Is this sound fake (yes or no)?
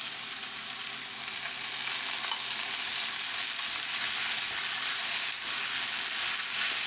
no